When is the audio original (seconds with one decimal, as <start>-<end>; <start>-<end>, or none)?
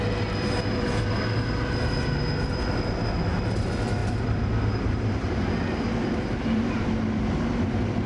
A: 0.0-4.0; 5.4-6.3; 6.9-8.1